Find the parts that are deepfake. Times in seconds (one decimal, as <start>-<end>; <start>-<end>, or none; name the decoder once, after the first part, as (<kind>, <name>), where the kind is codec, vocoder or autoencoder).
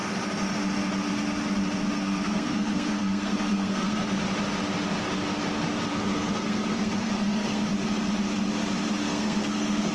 1.9-4.0 (codec, SNAC); 5.9-7.7; 9.0-9.9